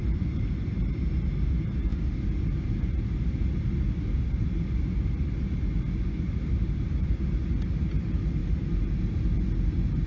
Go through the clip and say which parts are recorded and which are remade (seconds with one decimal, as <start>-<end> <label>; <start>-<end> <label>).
0.0-10.1 recorded